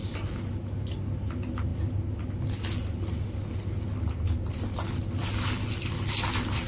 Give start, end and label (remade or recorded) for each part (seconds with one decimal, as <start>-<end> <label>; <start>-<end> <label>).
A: 0.0-6.7 recorded